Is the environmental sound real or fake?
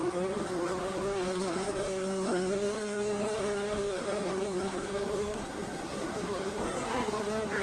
fake